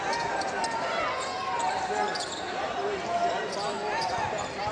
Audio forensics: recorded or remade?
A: recorded